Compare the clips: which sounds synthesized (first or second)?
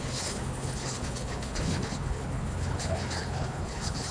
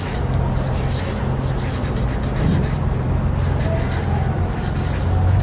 first